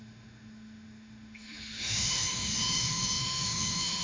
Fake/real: fake